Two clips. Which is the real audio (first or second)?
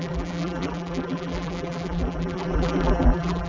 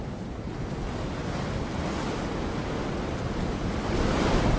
second